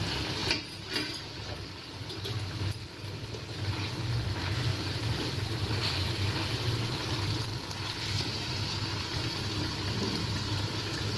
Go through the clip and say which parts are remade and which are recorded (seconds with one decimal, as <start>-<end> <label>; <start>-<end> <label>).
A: 0.0-0.4 recorded; 0.4-2.9 remade; 2.9-4.7 recorded; 4.7-7.0 remade; 7.0-11.2 recorded